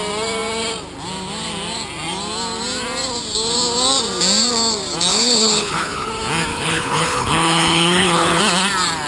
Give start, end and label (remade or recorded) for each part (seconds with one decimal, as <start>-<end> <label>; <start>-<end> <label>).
0.0-5.1 recorded; 5.1-6.1 remade; 6.1-6.5 recorded; 6.5-8.4 remade; 8.4-9.1 recorded